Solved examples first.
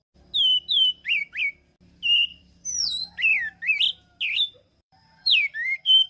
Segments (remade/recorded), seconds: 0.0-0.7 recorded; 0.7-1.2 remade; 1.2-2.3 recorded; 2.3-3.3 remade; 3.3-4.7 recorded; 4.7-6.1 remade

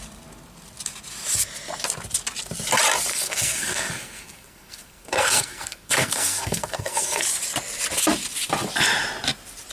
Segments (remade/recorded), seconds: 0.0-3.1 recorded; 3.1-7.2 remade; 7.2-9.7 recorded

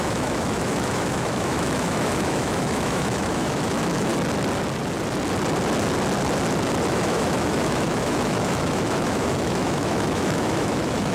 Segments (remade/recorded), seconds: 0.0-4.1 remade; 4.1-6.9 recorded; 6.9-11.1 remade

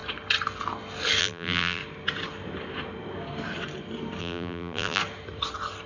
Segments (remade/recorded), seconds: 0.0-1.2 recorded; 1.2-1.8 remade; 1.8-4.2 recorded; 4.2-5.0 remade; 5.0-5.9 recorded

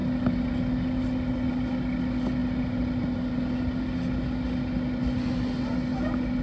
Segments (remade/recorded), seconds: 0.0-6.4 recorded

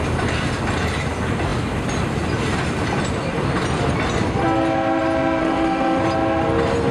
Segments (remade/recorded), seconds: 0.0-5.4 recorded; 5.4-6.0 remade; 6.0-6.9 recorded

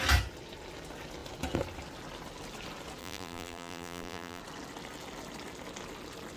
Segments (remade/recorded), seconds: 0.0-3.0 recorded; 3.0-4.4 remade; 4.4-6.4 recorded

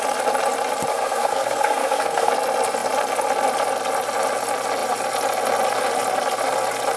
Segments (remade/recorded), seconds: 0.0-0.9 recorded; 0.9-2.3 remade; 2.3-7.0 recorded